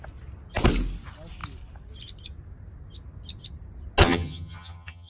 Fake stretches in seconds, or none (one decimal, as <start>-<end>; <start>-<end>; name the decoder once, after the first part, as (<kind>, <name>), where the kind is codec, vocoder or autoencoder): 4.0-5.1 (vocoder, HiFi-GAN)